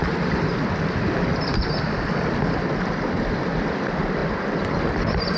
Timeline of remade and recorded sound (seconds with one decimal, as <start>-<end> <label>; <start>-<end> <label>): 0.0-5.4 recorded